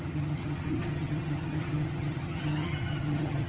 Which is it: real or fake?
fake